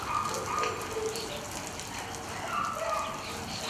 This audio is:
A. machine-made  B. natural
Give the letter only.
B